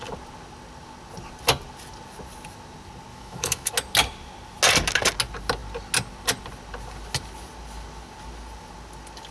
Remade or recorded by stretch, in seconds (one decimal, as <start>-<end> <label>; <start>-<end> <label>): 0.0-3.1 recorded; 3.1-3.7 remade; 3.7-9.3 recorded